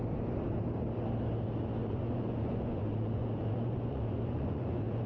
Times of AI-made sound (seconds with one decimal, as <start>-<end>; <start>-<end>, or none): 1.8-5.1